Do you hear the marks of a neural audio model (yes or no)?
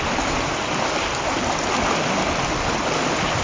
no